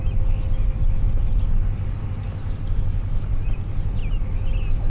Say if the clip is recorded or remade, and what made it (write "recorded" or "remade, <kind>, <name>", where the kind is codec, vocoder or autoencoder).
recorded